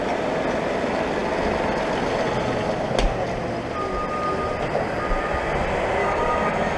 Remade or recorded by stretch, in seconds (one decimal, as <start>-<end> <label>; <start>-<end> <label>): 0.0-6.0 recorded; 6.0-6.8 remade